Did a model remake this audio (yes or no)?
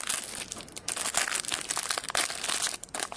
no